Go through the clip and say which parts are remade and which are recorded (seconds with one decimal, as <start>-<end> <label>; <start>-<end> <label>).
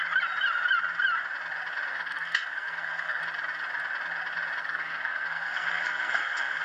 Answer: 0.0-1.9 recorded; 1.9-3.2 remade; 3.2-4.6 recorded; 4.6-6.6 remade